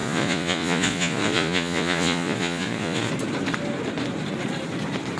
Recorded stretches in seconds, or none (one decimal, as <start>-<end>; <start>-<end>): 3.1-5.2

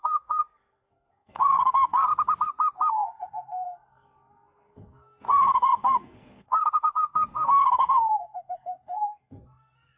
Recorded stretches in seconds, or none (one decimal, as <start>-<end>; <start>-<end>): 2.1-2.9

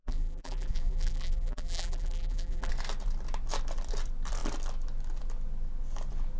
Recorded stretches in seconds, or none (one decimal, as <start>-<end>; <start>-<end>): 2.7-6.4

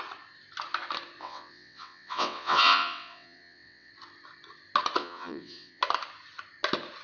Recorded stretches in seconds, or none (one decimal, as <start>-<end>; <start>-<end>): 0.0-1.2; 3.9-5.0; 5.8-7.0

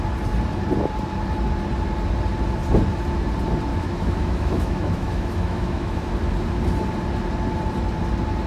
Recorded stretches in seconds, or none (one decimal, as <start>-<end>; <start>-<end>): 0.0-3.7; 6.0-8.5